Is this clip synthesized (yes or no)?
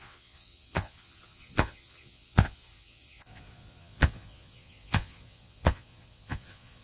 yes